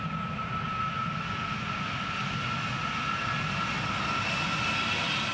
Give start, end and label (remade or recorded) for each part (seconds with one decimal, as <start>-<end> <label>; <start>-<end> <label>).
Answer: 0.0-5.3 recorded